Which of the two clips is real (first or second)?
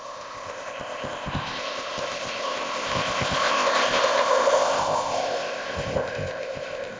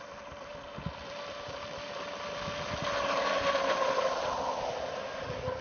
second